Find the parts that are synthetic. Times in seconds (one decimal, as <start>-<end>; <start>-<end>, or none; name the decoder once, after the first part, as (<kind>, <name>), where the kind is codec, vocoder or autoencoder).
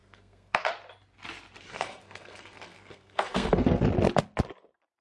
0.0-0.7 (codec, SNAC); 1.7-3.8